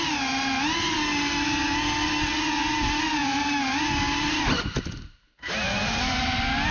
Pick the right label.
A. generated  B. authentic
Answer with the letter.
B